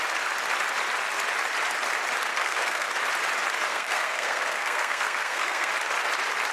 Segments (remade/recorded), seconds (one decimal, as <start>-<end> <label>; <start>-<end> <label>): 0.0-2.3 recorded; 2.3-2.9 remade; 2.9-3.7 recorded; 3.7-5.7 remade; 5.7-6.5 recorded